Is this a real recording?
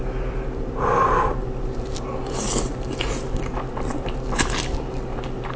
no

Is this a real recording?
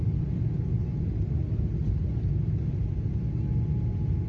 yes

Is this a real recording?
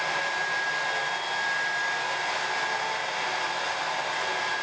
yes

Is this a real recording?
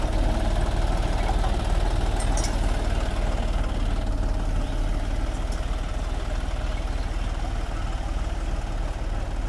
yes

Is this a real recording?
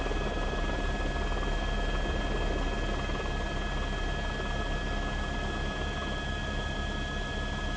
yes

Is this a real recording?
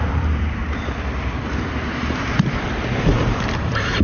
no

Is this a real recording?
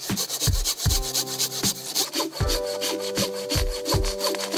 yes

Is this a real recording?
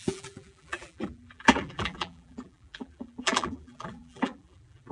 no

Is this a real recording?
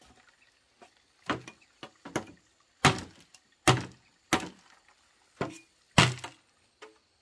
yes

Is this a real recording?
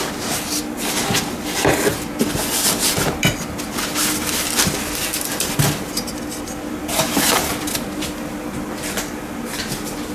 yes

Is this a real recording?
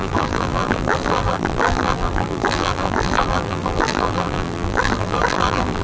no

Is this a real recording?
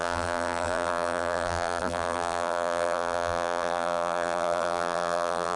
no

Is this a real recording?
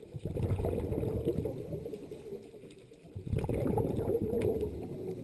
yes